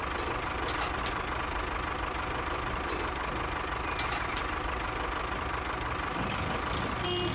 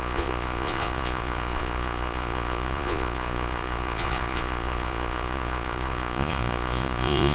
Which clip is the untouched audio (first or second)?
first